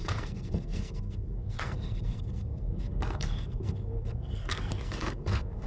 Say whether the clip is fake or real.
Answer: fake